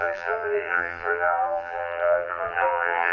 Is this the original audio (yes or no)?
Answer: no